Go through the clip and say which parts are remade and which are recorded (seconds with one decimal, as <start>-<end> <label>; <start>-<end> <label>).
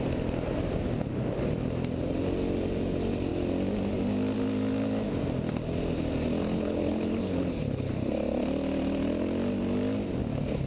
0.0-6.4 recorded; 6.4-7.9 remade; 7.9-10.7 recorded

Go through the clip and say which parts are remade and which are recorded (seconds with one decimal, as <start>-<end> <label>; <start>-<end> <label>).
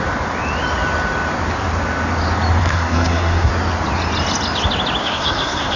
0.0-2.6 recorded; 2.6-3.5 remade; 3.5-5.0 recorded; 5.0-5.8 remade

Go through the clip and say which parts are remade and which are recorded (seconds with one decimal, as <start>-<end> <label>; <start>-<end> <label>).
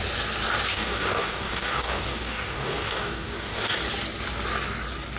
0.0-0.7 recorded; 0.7-3.8 remade; 3.8-5.2 recorded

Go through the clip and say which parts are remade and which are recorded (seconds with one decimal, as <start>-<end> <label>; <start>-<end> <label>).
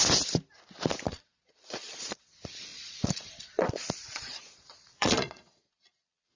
0.0-1.1 recorded; 1.1-2.3 remade; 2.3-2.7 recorded; 2.7-6.4 remade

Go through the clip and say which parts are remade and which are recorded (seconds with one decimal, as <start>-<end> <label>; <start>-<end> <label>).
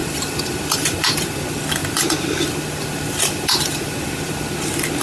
0.0-1.4 remade; 1.4-5.0 recorded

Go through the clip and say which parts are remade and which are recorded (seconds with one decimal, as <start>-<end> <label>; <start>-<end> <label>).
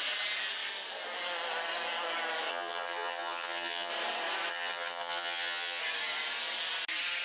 0.0-2.5 recorded; 2.5-3.9 remade; 3.9-4.5 recorded; 4.5-5.8 remade; 5.8-7.2 recorded